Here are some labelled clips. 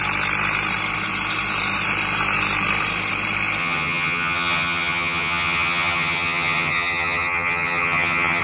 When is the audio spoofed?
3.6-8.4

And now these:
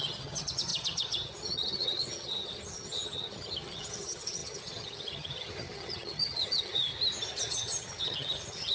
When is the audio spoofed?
0.0-6.9; 7.4-8.7

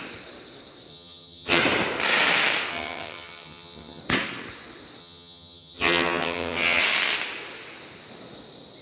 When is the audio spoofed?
0.9-1.6; 2.7-4.0; 5.0-6.8

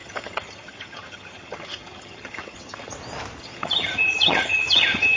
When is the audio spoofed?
0.0-2.9; 3.4-5.2

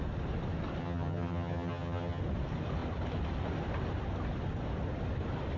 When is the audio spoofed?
0.8-2.2

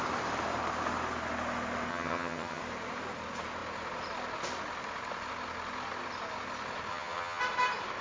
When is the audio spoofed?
1.9-2.6; 6.9-7.4

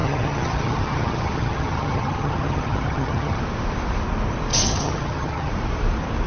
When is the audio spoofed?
0.0-3.4; 4.5-5.5

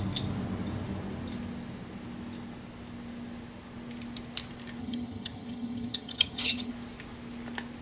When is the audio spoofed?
4.8-6.7